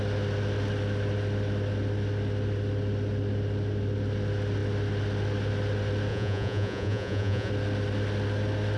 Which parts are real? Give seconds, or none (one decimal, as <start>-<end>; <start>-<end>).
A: 0.0-6.1; 7.5-8.8